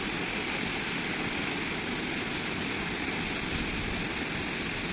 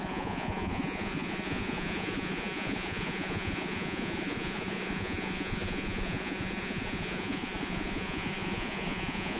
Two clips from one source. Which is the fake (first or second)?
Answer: second